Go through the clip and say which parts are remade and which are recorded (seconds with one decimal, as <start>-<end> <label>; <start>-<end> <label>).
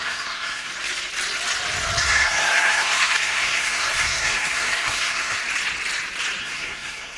0.0-0.7 remade; 0.7-2.0 recorded; 2.0-5.4 remade; 5.4-6.4 recorded; 6.4-7.2 remade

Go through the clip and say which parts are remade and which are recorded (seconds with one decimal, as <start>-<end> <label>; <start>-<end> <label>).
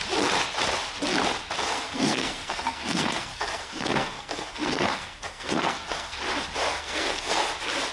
0.0-1.6 recorded; 1.6-6.2 remade; 6.2-6.7 recorded; 6.7-7.5 remade; 7.5-7.9 recorded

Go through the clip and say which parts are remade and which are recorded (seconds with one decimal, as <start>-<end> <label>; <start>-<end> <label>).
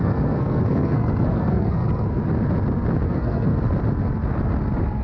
0.0-2.2 remade; 2.2-3.1 recorded; 3.1-3.5 remade; 3.5-5.0 recorded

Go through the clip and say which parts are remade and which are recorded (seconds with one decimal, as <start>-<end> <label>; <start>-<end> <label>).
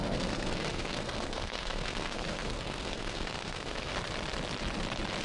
0.0-3.9 remade; 3.9-5.2 recorded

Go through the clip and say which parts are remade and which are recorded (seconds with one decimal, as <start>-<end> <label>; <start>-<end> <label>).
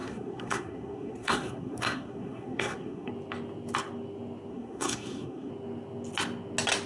0.0-3.1 remade; 3.1-4.5 recorded; 4.5-5.5 remade; 5.5-6.9 recorded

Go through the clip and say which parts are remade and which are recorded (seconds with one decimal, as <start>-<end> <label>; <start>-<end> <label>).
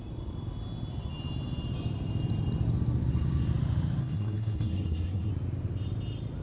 0.0-4.0 recorded; 4.0-5.3 remade; 5.3-6.4 recorded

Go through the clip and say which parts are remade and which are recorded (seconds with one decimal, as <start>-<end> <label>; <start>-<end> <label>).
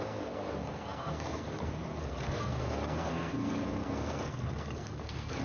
0.0-5.4 remade